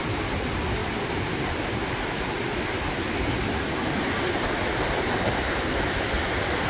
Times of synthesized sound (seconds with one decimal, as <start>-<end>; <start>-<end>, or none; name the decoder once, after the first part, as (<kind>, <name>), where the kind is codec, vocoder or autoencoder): none